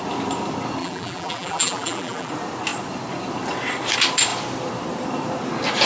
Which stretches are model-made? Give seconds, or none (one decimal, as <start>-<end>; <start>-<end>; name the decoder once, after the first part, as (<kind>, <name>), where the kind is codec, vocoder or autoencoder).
0.8-2.3 (vocoder, BigVGAN v2)